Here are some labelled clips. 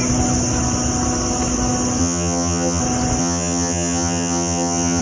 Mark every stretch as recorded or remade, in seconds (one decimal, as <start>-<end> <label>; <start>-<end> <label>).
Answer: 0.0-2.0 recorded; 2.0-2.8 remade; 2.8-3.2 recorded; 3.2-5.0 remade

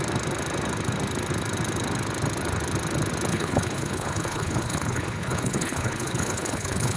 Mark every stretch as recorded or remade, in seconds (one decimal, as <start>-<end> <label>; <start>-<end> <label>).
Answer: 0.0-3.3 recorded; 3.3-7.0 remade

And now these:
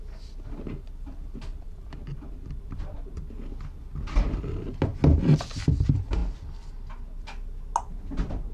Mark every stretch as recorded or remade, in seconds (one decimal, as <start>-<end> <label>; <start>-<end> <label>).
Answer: 0.0-1.5 recorded; 1.5-3.3 remade; 3.3-8.5 recorded

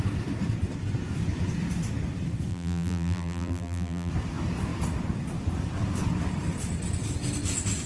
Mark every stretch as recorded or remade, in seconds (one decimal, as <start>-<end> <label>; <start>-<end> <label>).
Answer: 0.0-2.5 recorded; 2.5-4.1 remade; 4.1-7.9 recorded

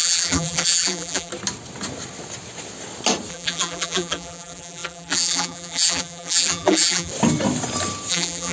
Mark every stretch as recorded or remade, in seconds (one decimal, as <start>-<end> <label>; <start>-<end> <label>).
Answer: 0.0-1.3 remade; 1.3-3.3 recorded; 3.3-7.1 remade; 7.1-8.1 recorded; 8.1-8.5 remade